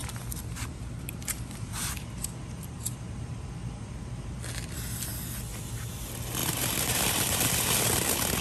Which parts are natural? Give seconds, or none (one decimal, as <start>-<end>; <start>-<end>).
4.4-6.4; 7.0-8.4